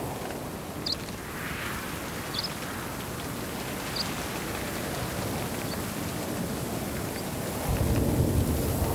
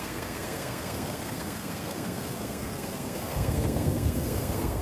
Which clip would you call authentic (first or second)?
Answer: first